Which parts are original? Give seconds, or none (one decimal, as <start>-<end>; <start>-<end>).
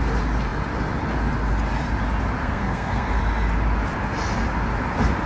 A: 0.0-2.4; 3.2-5.3